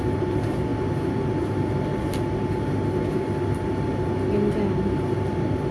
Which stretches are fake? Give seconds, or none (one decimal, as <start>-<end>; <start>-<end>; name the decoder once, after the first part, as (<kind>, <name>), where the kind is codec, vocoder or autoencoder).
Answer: none